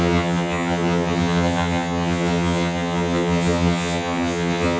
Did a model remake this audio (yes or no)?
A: yes